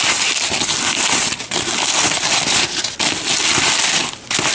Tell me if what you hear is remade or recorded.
recorded